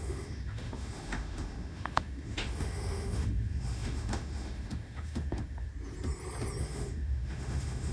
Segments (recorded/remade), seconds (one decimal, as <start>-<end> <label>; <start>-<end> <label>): 0.0-5.7 remade; 5.7-6.6 recorded; 6.6-7.9 remade